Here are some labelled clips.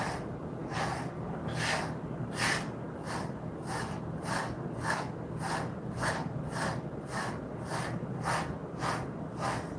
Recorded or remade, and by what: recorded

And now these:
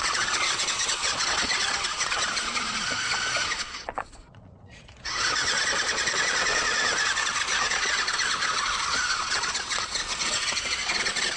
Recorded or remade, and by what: remade, vocoder, Vocos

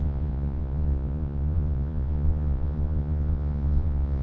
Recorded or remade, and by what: remade, vocoder, Vocos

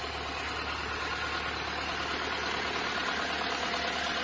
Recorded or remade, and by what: recorded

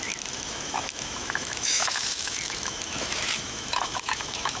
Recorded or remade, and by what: remade, autoencoder, DAC-VAE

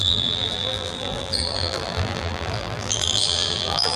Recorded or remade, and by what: remade, vocoder, BigVGAN v2